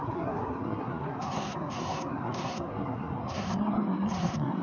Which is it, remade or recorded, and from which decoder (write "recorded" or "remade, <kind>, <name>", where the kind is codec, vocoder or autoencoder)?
remade, codec, SNAC